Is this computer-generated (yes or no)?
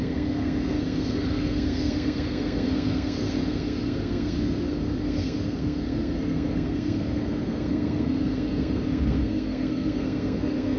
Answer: yes